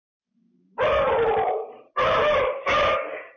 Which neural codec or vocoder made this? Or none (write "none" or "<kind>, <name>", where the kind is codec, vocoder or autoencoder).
none